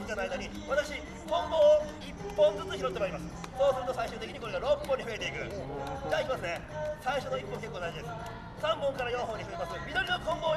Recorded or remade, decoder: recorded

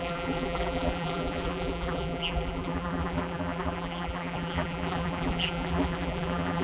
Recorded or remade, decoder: remade, vocoder, BigVGAN v2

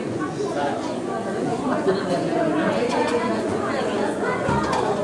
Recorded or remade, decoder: remade, vocoder, Vocos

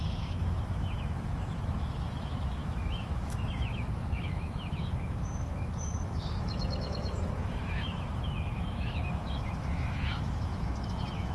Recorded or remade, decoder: remade, autoencoder, DAC-VAE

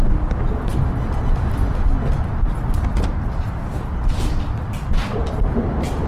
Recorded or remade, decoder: recorded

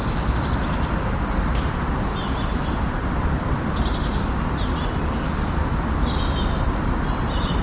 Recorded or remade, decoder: recorded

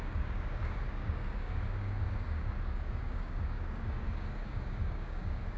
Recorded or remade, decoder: remade, codec, DAC